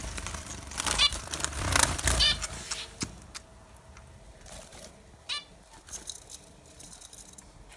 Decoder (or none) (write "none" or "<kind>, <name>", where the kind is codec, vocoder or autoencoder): none